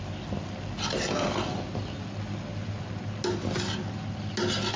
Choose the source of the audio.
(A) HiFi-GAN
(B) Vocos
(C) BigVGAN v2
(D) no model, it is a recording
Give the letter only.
D